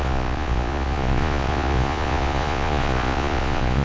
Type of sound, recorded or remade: remade